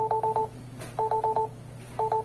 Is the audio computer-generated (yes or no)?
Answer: no